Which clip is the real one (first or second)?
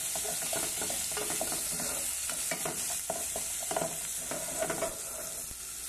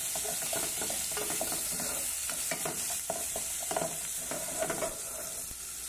first